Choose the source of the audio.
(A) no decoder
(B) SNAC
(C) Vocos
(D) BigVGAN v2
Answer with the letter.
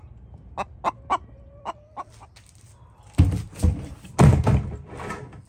A